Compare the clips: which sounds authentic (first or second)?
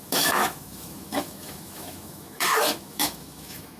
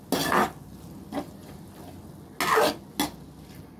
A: second